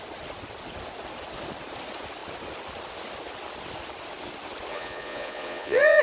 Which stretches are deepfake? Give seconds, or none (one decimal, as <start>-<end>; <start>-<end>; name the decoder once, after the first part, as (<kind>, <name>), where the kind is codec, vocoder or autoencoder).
4.7-6.0 (vocoder, Vocos)